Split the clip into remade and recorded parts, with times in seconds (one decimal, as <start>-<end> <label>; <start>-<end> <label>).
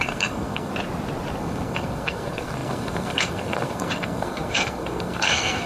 0.0-0.7 remade; 0.7-1.4 recorded; 1.4-5.7 remade